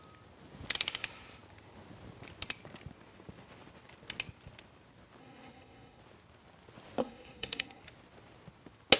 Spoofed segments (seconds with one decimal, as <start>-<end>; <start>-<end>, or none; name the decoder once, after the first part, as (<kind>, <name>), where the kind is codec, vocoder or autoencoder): 5.2-6.0 (codec, SNAC); 7.0-7.8